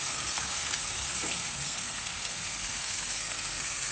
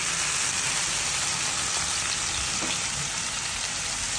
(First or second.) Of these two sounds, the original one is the second